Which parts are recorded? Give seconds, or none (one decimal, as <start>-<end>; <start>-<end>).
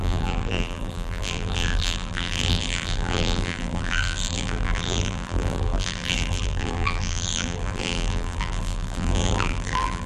none